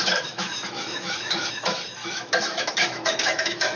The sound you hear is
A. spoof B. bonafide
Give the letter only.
A